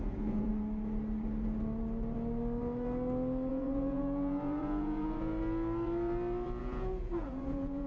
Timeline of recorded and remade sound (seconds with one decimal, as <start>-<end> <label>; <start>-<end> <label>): 0.0-0.5 remade; 0.5-3.5 recorded; 3.5-5.3 remade; 5.3-6.6 recorded; 6.6-7.9 remade